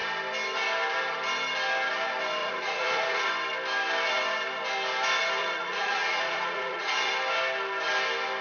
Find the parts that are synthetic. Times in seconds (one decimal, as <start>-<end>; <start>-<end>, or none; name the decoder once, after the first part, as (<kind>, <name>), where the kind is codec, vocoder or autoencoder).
2.4-3.3 (vocoder, Vocos); 5.4-7.1